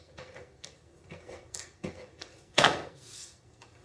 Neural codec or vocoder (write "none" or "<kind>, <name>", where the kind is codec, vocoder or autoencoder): codec, SNAC